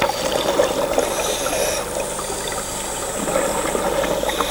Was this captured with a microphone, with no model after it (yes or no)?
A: yes